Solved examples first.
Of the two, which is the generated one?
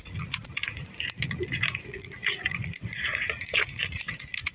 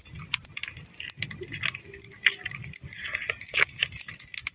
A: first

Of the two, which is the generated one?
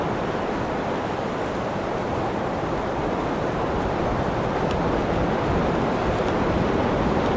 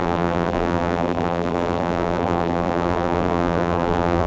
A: second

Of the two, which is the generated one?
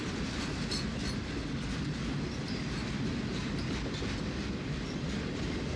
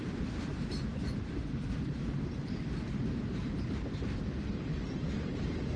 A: second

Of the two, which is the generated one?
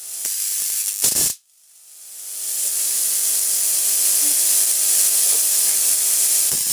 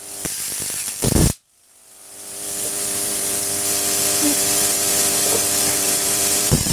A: second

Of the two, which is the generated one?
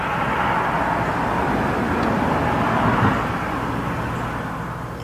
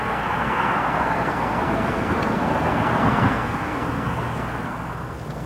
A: second